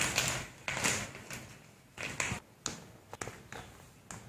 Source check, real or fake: real